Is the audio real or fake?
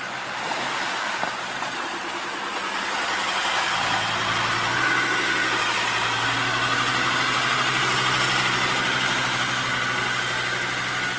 real